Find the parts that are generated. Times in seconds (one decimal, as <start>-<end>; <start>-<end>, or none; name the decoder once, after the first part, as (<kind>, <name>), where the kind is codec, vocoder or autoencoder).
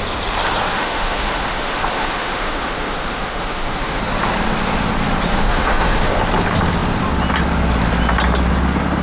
0.7-4.0 (autoencoder, DAC-VAE); 5.3-6.2